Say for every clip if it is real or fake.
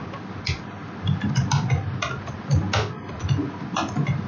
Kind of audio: real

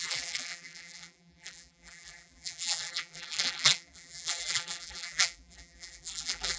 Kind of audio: fake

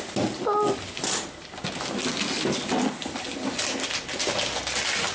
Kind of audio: real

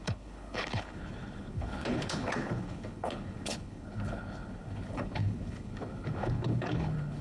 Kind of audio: fake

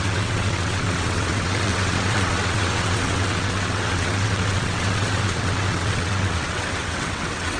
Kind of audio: fake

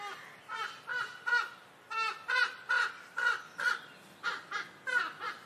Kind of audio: real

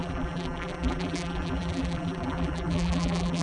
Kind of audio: fake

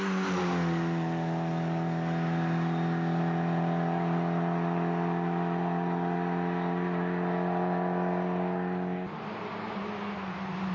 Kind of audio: real